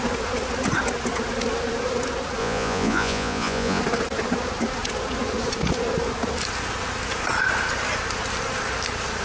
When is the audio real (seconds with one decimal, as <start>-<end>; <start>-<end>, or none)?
0.0-2.4; 3.8-9.2